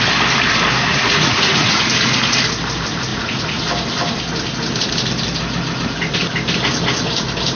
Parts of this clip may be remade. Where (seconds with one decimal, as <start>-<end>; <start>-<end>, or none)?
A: 0.9-1.8; 3.1-3.6